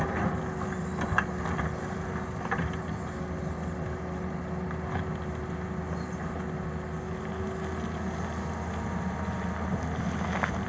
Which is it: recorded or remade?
recorded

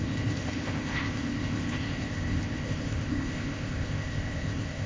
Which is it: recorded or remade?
remade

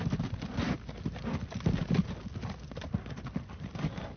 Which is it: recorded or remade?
recorded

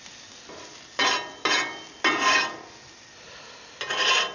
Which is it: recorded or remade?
recorded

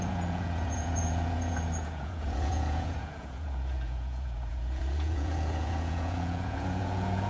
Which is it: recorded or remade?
remade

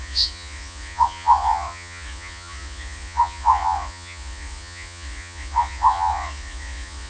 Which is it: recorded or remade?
remade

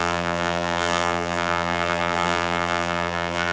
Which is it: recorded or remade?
remade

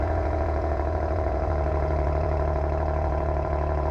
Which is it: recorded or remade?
remade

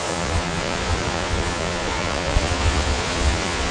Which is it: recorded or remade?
remade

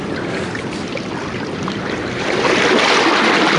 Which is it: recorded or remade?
recorded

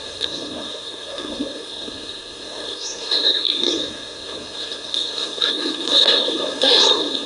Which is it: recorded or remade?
remade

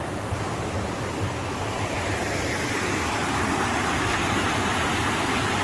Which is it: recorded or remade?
recorded